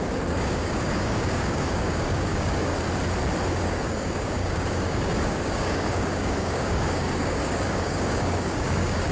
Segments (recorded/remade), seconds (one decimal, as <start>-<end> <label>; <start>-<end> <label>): 0.0-2.7 remade; 2.7-3.5 recorded; 3.5-9.1 remade